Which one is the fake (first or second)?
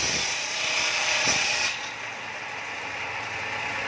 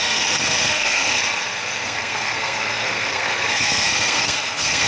second